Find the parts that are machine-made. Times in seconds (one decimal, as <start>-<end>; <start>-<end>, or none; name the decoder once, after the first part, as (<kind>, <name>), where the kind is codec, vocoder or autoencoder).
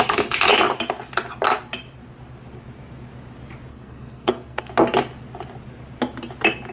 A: 3.7-4.7 (codec, SNAC)